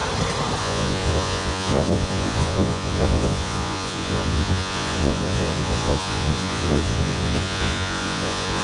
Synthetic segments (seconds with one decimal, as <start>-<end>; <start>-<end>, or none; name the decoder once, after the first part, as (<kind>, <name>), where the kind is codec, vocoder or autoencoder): 0.6-8.6 (vocoder, Vocos)